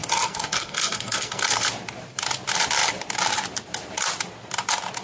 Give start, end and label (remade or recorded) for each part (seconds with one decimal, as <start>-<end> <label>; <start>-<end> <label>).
0.0-1.7 remade; 1.7-5.0 recorded